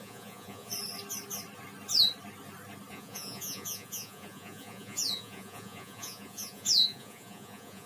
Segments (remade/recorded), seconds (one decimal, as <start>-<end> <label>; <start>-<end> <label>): 0.0-0.7 remade; 0.7-2.9 recorded; 2.9-7.9 remade